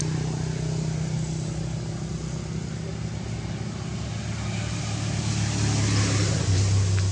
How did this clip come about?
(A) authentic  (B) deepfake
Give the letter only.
A